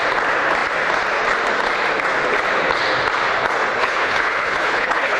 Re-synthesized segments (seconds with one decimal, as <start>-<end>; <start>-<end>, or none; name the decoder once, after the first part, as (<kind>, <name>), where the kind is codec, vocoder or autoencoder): 3.8-5.2 (codec, HILCodec)